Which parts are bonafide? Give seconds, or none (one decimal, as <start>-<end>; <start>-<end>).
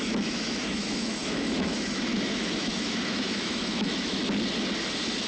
4.2-5.3